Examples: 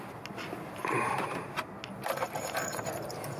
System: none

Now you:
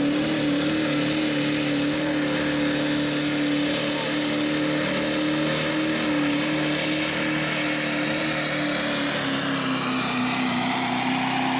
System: none